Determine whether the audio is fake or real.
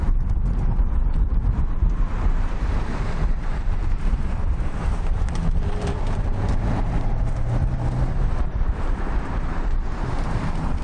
fake